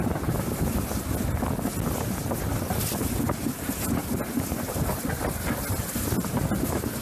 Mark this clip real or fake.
real